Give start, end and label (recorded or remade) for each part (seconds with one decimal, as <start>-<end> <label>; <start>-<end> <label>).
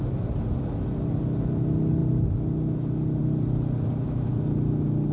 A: 0.0-5.1 recorded